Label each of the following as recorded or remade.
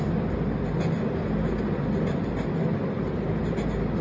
recorded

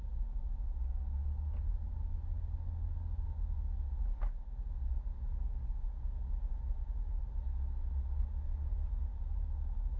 recorded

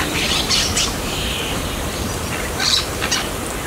recorded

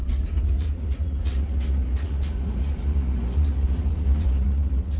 remade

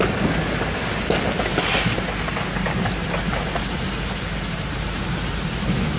recorded